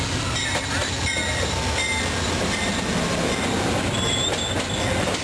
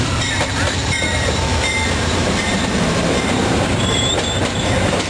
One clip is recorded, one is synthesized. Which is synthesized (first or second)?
second